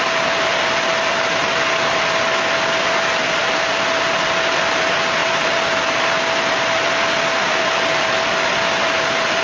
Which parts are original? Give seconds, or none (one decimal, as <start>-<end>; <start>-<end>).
0.0-9.4